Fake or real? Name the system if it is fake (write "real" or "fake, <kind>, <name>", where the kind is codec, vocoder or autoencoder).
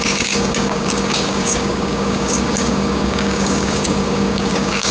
fake, codec, DAC